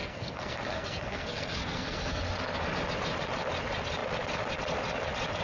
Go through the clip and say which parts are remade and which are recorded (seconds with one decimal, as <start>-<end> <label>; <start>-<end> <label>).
0.0-2.2 remade; 2.2-5.4 recorded

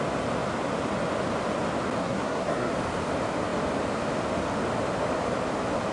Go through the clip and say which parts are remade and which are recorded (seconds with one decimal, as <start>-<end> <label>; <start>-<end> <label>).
0.0-2.0 recorded; 2.0-2.7 remade; 2.7-5.9 recorded

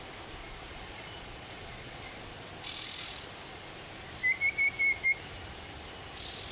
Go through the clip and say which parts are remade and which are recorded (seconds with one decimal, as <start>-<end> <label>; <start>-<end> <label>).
0.0-0.4 recorded; 0.4-2.0 remade; 2.0-6.5 recorded

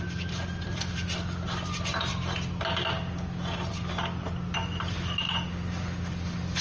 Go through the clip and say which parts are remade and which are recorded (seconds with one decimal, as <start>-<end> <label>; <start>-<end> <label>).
0.0-6.6 recorded

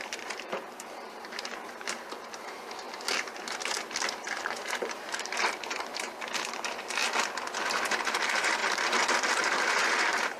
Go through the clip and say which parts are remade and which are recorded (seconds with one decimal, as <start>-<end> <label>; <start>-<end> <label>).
0.0-7.0 remade; 7.0-7.6 recorded; 7.6-10.4 remade

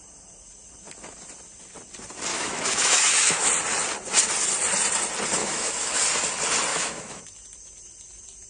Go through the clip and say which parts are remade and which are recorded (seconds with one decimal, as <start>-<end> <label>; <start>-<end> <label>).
0.0-2.3 recorded; 2.3-3.5 remade; 3.5-5.4 recorded; 5.4-6.0 remade; 6.0-6.7 recorded; 6.7-7.2 remade; 7.2-8.5 recorded

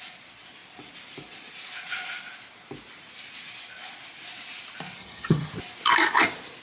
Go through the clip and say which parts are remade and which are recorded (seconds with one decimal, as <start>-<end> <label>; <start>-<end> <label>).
0.0-5.0 recorded; 5.0-5.5 remade; 5.5-6.6 recorded